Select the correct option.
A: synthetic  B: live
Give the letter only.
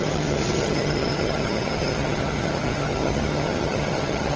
A